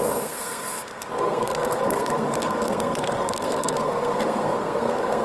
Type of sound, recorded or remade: remade